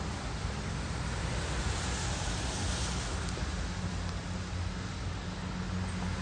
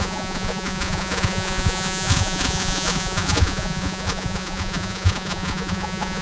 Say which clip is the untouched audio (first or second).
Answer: first